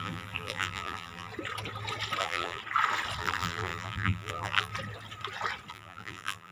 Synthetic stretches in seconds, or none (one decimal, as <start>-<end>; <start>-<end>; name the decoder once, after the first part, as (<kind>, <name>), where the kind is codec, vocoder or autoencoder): 0.0-1.3 (vocoder, BigVGAN v2); 2.2-2.6; 3.2-4.7; 5.7-6.5